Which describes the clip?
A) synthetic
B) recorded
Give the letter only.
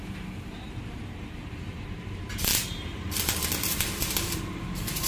A